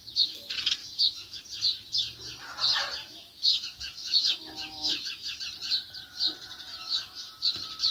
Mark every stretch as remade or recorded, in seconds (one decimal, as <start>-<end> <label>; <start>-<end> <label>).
0.0-0.8 recorded; 0.8-1.4 remade; 1.4-3.0 recorded; 3.0-5.4 remade; 5.4-6.7 recorded; 6.7-7.3 remade; 7.3-7.9 recorded